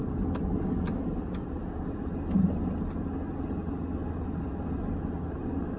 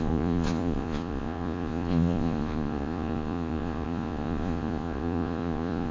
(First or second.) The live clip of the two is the first